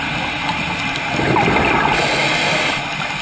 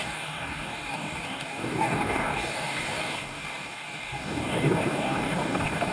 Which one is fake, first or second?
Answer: second